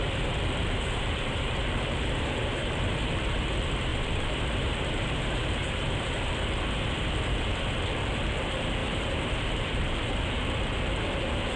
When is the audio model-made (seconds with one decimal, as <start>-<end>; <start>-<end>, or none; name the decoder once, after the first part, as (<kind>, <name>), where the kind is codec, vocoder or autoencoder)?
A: 0.6-2.8 (vocoder, BigVGAN v2); 3.9-6.3; 8.8-10.4